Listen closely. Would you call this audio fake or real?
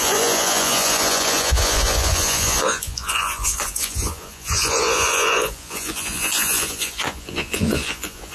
fake